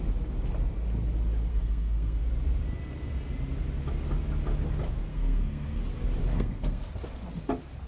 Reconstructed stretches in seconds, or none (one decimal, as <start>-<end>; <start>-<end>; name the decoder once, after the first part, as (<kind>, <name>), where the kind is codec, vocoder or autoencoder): 1.5-2.2 (codec, SNAC); 5.1-5.8; 6.3-6.9